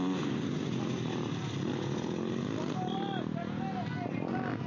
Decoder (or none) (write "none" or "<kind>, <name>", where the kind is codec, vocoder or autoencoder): none